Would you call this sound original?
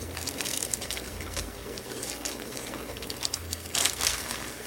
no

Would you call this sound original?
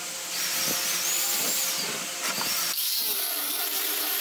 yes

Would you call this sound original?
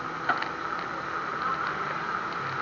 yes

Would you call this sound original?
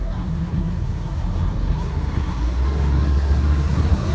no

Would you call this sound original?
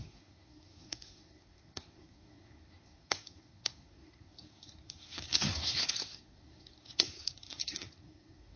no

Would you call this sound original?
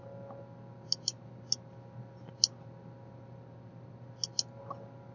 yes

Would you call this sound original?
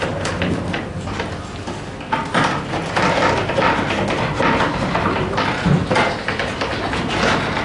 yes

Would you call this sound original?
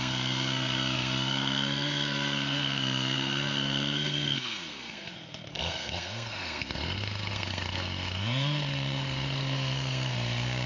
no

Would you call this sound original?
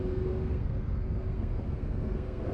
no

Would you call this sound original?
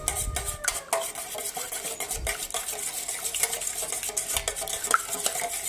yes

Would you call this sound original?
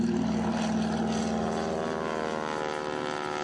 yes